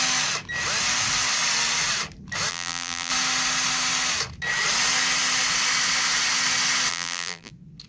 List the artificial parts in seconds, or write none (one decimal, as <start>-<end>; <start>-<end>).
2.5-3.1; 6.9-7.5